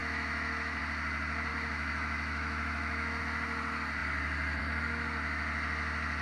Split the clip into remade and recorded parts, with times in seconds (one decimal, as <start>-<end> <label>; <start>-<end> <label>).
0.0-0.8 remade; 0.8-1.5 recorded; 1.5-3.2 remade; 3.2-6.2 recorded